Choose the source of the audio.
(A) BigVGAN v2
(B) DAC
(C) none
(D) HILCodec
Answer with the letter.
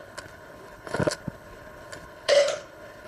D